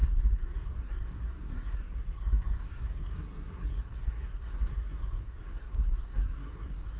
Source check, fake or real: fake